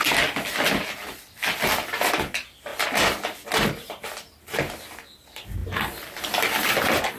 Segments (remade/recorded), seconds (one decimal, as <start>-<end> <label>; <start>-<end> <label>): 0.0-7.2 recorded